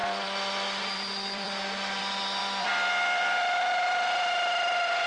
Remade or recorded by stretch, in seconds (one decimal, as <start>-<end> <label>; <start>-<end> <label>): 0.0-2.0 remade; 2.0-2.4 recorded; 2.4-5.1 remade